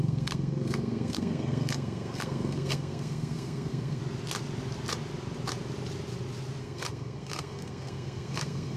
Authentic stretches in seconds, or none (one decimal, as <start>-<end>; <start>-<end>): 4.0-6.6